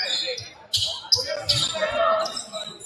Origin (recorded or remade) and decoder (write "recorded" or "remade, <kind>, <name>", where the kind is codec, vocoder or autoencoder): recorded